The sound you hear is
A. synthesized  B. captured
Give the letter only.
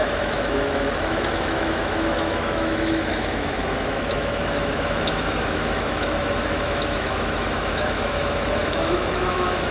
A